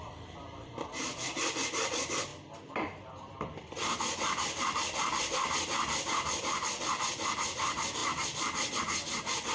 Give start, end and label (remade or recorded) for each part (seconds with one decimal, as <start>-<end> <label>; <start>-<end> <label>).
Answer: 0.0-2.3 remade; 2.3-3.1 recorded; 3.1-9.5 remade